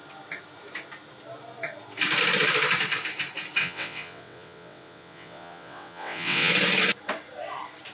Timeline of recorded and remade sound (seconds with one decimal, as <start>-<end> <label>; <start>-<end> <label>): 0.0-3.6 recorded; 3.6-6.5 remade; 6.5-7.9 recorded